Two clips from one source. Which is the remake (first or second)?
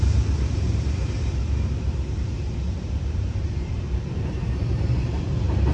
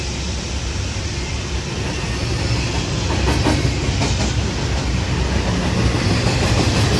first